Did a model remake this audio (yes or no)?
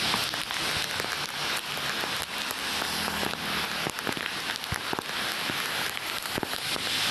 no